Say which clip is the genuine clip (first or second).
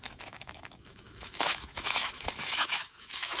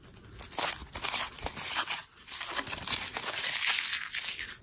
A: second